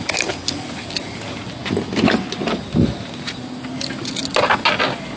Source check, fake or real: real